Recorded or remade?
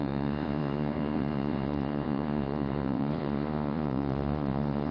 remade